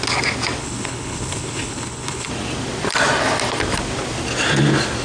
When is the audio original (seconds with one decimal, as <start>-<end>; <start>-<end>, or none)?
0.0-0.6; 2.3-5.0